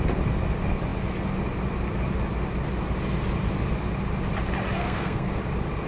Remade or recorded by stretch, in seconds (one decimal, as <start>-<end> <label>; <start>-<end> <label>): 0.0-4.8 recorded; 4.8-5.4 remade; 5.4-5.9 recorded